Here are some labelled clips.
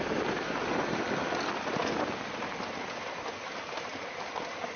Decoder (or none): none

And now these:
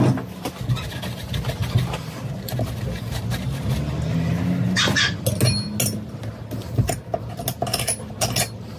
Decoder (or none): none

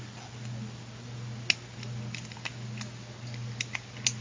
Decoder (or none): none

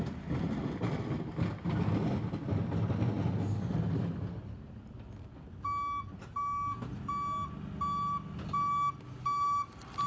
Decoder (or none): none